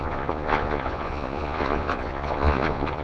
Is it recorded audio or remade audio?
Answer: remade